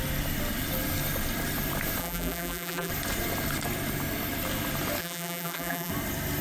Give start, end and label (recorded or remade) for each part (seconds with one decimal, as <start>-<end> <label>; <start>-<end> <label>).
0.0-2.0 recorded; 2.0-2.9 remade; 2.9-5.0 recorded; 5.0-5.9 remade; 5.9-6.4 recorded